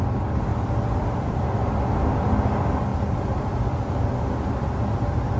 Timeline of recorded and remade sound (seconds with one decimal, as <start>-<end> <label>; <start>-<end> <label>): 0.0-0.5 recorded; 0.5-1.3 remade; 1.3-2.9 recorded; 2.9-4.2 remade; 4.2-5.4 recorded